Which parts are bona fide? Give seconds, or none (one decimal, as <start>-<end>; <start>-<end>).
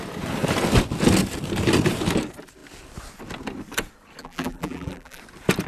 0.0-4.2; 5.2-5.7